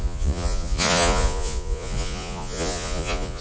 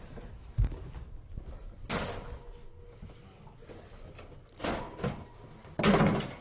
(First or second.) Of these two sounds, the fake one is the first